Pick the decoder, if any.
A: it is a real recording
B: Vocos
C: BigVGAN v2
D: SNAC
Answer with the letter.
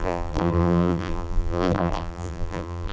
C